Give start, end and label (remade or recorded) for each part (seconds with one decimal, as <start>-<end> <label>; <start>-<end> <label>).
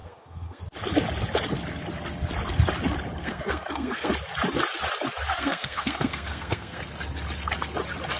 0.0-0.6 remade; 0.6-3.2 recorded; 3.2-4.1 remade; 4.1-5.3 recorded; 5.3-6.8 remade; 6.8-8.2 recorded